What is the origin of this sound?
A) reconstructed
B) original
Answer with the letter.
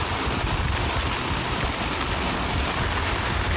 B